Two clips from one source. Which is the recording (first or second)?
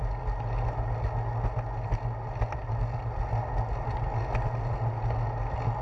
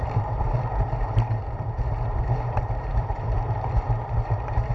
first